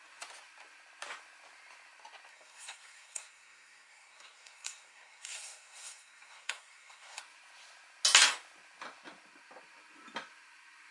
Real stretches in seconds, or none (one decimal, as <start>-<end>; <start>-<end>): 0.0-2.3; 7.2-10.9